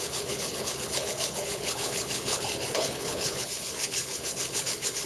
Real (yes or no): no